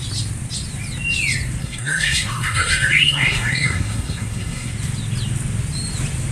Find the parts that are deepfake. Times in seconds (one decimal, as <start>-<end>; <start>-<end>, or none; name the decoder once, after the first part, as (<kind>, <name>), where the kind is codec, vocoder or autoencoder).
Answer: 1.6-4.7 (codec, SNAC)